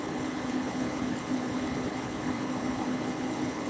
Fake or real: fake